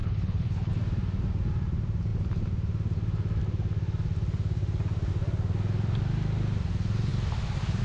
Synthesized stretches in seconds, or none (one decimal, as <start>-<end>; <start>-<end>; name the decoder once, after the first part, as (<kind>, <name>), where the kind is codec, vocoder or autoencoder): 0.0-0.7 (codec, HILCodec)